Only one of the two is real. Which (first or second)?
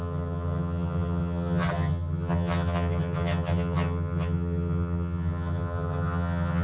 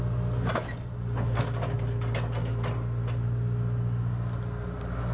second